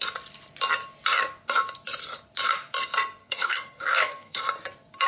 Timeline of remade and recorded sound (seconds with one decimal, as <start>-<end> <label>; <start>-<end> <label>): 0.0-3.2 recorded; 3.2-4.4 remade; 4.4-5.1 recorded